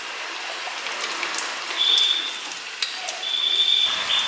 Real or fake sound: real